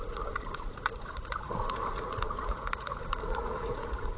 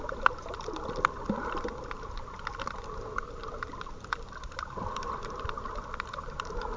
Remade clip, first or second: first